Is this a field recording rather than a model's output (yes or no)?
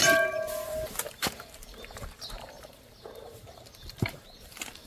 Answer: no